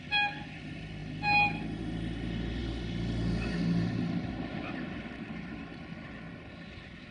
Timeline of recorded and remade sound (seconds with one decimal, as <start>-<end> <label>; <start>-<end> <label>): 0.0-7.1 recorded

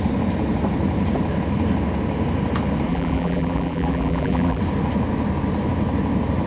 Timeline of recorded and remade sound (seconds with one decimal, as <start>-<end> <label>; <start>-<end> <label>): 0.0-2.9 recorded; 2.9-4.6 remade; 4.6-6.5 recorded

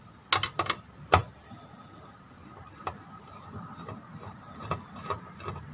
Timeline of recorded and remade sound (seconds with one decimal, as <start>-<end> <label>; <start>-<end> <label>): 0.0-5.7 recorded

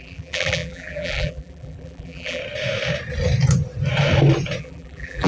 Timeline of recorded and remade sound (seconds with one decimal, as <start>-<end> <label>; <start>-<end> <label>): 0.0-2.4 remade; 2.4-4.6 recorded; 4.6-5.3 remade

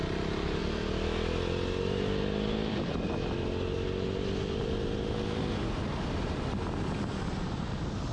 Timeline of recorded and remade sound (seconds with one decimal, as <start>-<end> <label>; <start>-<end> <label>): 0.0-8.1 recorded

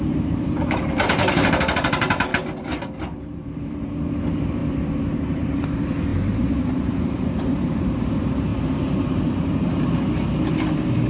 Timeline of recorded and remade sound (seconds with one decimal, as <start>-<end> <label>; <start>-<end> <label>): 0.0-2.3 remade; 2.3-3.2 recorded; 3.2-11.1 remade

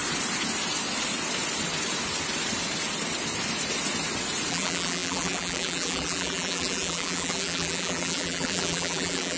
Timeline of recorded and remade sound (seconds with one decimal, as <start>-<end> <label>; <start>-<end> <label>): 0.0-4.5 recorded; 4.5-9.4 remade

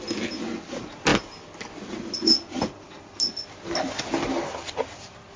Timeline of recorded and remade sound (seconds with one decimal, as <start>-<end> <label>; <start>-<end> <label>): 0.0-5.4 recorded